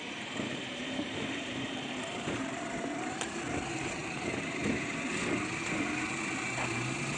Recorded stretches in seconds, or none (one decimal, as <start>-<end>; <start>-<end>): 4.0-6.7